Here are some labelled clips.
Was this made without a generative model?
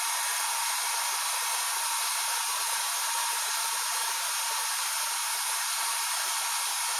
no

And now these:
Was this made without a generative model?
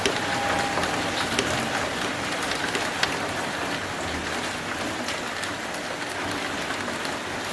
yes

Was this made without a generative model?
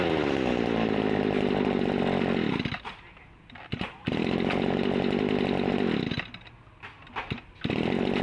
yes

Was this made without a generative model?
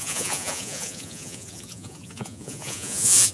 no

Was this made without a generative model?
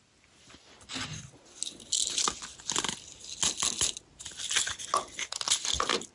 yes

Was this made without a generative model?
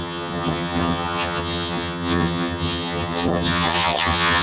no